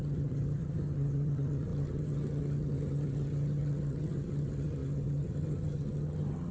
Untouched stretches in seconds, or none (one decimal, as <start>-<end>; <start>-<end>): none